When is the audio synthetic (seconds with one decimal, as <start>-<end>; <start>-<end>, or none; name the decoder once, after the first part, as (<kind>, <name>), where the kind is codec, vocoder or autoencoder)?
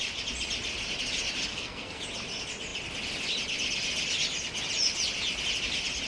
1.5-2.0 (codec, SNAC)